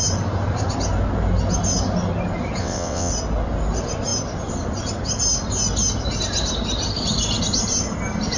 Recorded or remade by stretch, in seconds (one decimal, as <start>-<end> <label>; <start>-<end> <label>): 0.0-2.6 recorded; 2.6-3.1 remade; 3.1-8.4 recorded

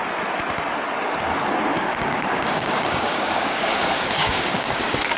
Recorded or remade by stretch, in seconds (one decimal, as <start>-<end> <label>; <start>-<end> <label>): 0.0-1.7 recorded; 1.7-4.8 remade; 4.8-5.2 recorded

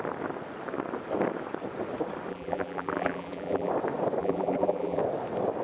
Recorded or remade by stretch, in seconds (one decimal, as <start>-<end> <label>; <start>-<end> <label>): 0.0-2.3 recorded; 2.3-3.7 remade; 3.7-4.2 recorded; 4.2-5.0 remade; 5.0-5.6 recorded

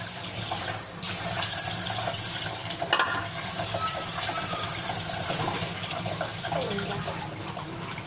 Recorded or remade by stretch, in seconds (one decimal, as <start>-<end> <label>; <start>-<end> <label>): 0.0-2.6 remade; 2.6-3.4 recorded; 3.4-6.3 remade; 6.3-8.1 recorded

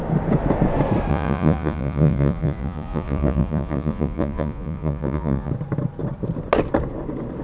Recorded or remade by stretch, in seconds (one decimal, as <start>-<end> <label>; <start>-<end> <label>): 0.0-1.1 recorded; 1.1-5.5 remade; 5.5-7.4 recorded